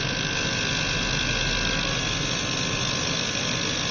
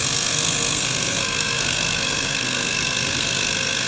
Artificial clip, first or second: second